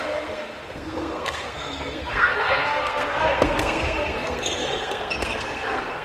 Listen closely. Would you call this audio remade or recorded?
remade